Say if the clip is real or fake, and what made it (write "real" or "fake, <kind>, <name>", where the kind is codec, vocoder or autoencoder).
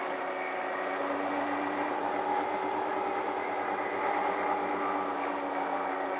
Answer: real